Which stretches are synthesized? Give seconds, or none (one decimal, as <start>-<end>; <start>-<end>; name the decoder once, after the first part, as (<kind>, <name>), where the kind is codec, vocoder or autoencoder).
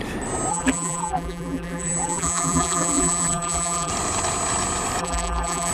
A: 0.5-3.9 (vocoder, BigVGAN v2); 5.0-5.7